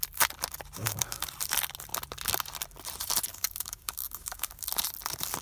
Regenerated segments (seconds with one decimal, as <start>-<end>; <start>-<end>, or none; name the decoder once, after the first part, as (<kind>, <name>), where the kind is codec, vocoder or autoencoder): 0.8-1.3 (codec, DAC); 3.3-4.7